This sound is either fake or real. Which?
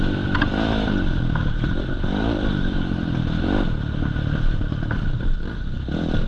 fake